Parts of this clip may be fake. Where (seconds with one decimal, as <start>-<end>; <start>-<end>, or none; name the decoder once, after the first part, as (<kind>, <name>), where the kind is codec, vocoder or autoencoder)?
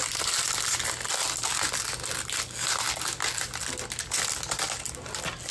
none